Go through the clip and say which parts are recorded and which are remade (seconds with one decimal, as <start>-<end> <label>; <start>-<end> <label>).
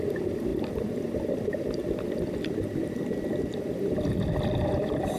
0.0-0.5 recorded; 0.5-1.8 remade; 1.8-5.2 recorded